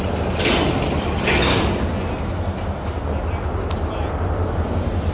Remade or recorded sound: recorded